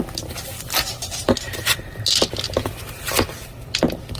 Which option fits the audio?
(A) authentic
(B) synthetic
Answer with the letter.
A